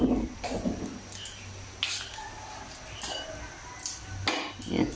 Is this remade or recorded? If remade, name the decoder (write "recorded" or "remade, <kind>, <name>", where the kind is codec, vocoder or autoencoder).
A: recorded